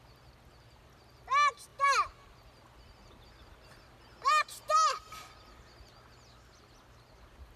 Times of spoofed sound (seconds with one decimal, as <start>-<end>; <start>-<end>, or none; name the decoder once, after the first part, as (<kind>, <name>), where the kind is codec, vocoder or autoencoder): none